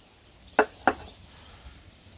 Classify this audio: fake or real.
real